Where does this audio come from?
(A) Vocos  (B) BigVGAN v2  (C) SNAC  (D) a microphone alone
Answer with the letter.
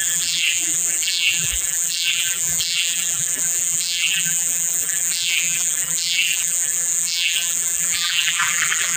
B